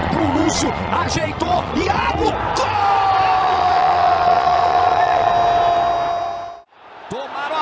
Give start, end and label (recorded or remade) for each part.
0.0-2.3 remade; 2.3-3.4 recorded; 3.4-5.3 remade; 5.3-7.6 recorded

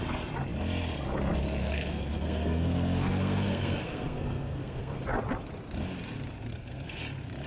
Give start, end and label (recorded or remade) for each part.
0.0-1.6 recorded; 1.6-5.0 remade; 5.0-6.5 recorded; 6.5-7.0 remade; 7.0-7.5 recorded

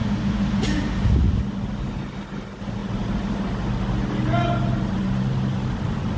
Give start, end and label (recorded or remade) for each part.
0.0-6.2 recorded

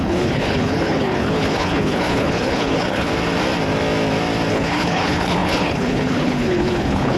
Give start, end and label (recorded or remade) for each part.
0.0-3.1 remade; 3.1-4.5 recorded; 4.5-7.2 remade